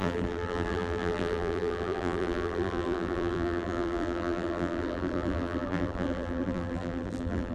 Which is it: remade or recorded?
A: remade